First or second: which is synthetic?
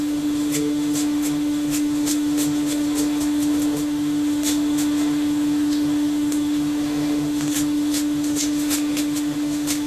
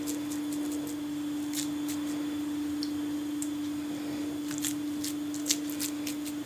first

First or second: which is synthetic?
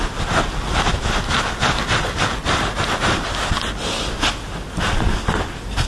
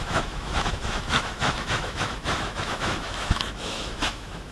second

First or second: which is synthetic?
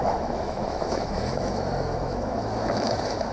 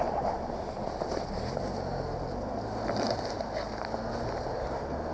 first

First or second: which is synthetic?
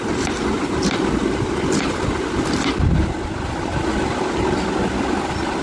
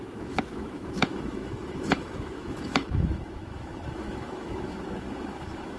second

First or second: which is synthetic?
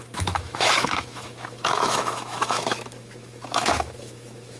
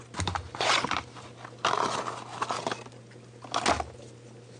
first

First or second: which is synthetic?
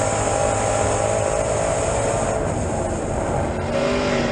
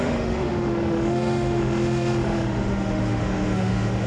second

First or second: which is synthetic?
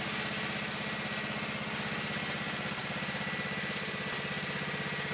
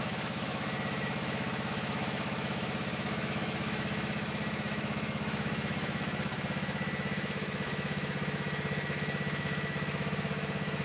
second